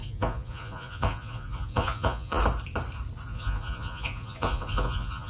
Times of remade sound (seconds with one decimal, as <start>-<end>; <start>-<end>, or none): 0.0-2.4; 3.3-5.3